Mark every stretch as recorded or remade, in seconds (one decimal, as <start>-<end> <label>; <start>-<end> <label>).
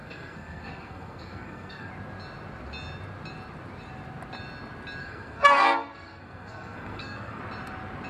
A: 0.0-1.9 remade; 1.9-5.0 recorded; 5.0-7.4 remade; 7.4-8.1 recorded